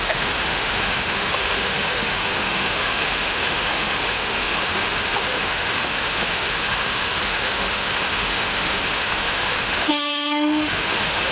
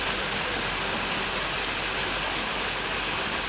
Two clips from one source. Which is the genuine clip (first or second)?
second